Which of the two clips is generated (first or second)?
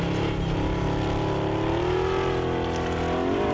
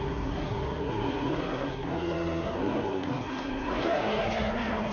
second